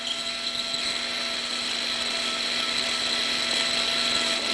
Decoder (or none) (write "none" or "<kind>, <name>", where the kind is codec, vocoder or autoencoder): none